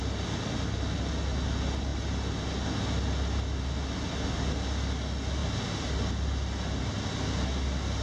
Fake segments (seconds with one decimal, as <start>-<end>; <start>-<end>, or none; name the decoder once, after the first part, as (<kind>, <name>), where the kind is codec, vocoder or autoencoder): none